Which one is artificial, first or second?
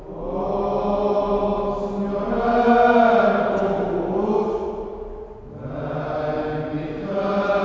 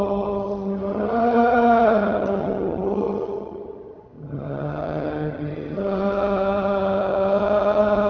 second